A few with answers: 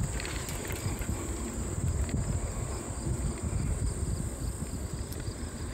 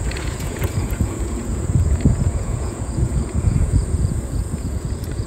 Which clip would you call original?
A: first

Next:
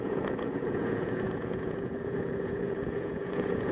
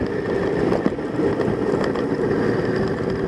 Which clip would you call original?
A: second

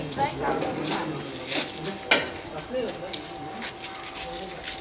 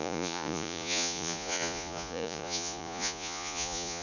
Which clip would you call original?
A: first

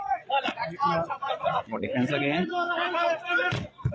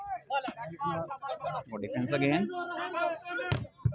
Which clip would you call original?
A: second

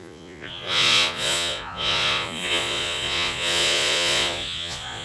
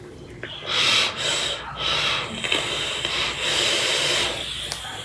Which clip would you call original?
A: second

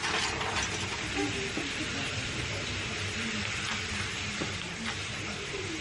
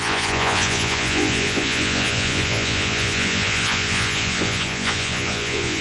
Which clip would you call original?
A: first